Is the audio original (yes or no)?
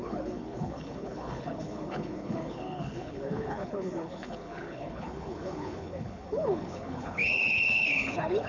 no